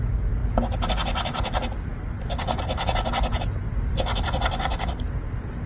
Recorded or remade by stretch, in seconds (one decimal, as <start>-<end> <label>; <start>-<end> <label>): 0.0-5.7 recorded